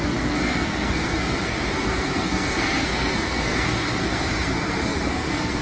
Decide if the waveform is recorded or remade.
remade